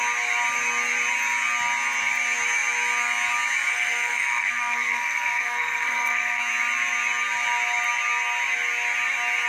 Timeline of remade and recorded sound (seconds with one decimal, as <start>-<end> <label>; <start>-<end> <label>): 0.0-3.7 recorded; 3.7-6.4 remade; 6.4-9.5 recorded